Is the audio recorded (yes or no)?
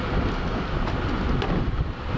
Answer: yes